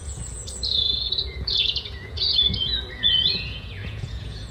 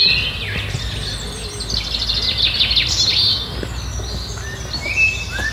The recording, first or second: second